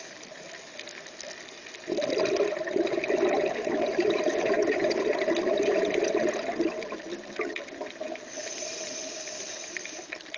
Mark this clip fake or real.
real